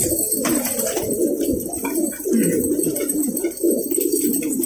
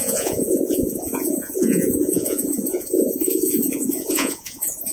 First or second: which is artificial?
second